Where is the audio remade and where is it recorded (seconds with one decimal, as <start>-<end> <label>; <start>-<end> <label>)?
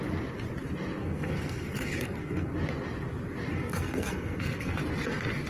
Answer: 0.0-1.0 recorded; 1.0-2.5 remade; 2.5-3.5 recorded; 3.5-4.8 remade; 4.8-5.5 recorded